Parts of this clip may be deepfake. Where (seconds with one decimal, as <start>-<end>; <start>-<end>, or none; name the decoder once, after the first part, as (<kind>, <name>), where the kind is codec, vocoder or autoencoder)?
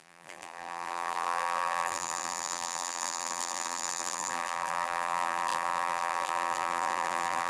0.0-7.5 (vocoder, BigVGAN v2)